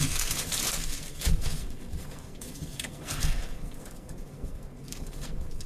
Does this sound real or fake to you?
fake